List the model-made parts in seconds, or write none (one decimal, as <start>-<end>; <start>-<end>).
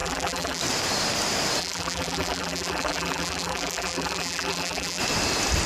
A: 0.0-0.6; 1.6-5.0